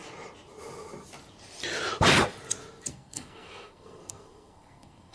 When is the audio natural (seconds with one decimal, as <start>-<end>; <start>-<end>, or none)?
0.0-2.9